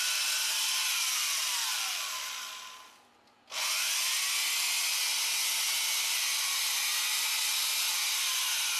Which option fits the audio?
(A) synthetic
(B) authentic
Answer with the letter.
B